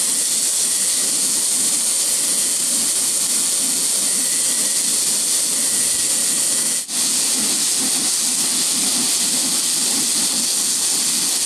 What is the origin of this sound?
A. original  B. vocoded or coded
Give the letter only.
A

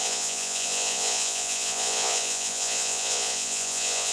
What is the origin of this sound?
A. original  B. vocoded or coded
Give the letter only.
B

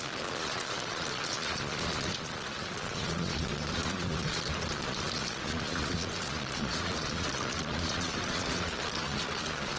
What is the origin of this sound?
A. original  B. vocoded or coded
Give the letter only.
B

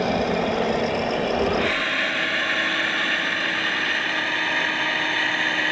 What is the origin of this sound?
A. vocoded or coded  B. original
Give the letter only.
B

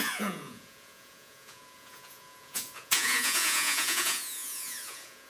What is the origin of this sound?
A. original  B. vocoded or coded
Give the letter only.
B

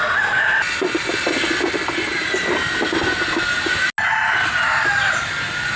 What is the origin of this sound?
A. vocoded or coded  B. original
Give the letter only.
B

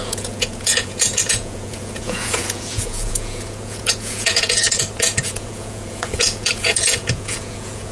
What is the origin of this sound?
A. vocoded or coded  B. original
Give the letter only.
A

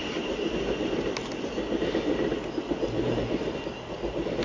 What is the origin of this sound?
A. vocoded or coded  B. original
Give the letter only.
B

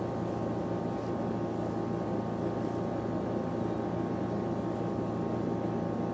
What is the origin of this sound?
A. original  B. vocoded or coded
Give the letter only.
A